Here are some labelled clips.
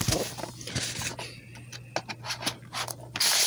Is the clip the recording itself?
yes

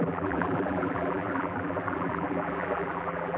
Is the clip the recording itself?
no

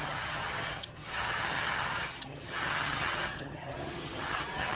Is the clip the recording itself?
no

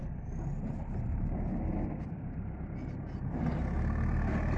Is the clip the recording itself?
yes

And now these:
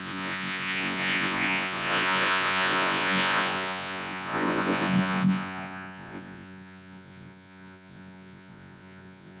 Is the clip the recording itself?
no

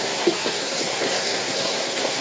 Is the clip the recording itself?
no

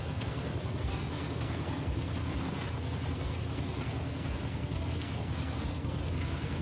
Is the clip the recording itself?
no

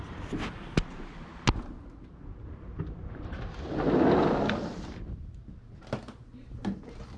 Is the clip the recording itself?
yes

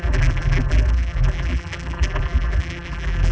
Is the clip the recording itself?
no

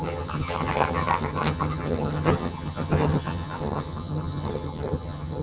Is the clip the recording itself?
no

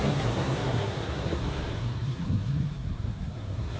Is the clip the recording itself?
no